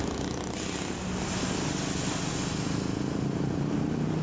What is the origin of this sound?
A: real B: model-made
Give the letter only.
A